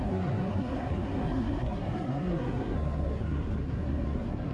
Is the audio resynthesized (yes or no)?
yes